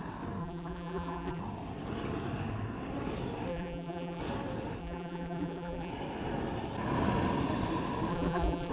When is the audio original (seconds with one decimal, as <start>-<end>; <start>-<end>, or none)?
0.0-0.4; 1.4-3.5; 4.2-4.8; 5.9-8.1